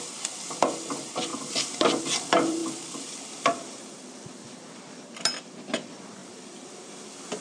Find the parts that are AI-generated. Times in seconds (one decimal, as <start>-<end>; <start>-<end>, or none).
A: 0.0-6.2